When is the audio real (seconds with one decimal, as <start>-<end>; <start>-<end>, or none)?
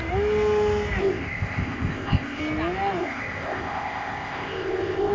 0.0-1.0; 2.4-3.0